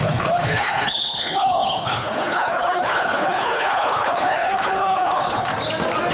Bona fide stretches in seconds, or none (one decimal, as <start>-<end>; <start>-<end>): 5.5-6.1